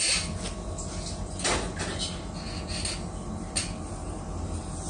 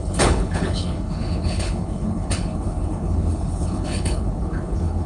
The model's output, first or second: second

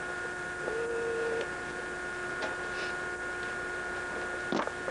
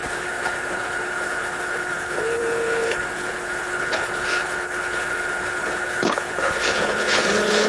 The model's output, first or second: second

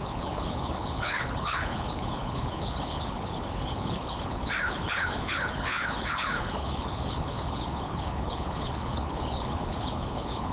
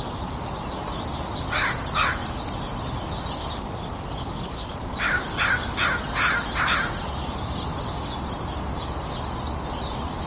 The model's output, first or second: first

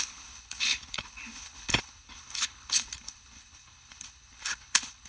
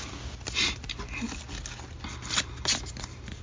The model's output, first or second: first